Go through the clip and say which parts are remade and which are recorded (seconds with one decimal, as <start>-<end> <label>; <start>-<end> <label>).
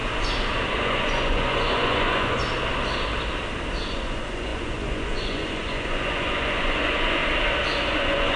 0.0-0.7 recorded; 0.7-2.4 remade; 2.4-3.9 recorded; 3.9-7.2 remade; 7.2-7.9 recorded; 7.9-8.4 remade